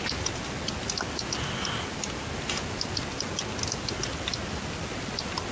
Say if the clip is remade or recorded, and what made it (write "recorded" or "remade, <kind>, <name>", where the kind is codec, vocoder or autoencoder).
recorded